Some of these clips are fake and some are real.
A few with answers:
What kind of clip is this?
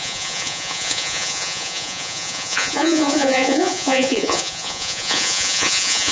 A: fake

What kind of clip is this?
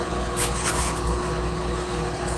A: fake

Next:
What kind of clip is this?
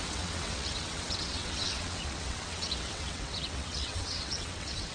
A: fake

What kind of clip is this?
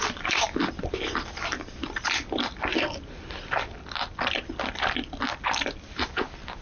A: real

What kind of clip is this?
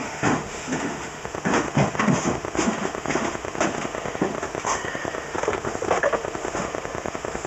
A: fake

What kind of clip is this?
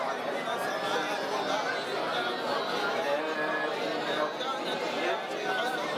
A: real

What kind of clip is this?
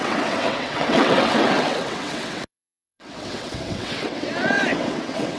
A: fake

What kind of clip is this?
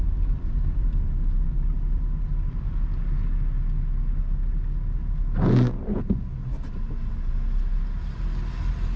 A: real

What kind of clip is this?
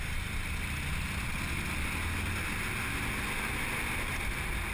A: real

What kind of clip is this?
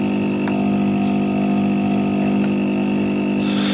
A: real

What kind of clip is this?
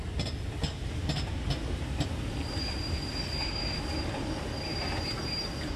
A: real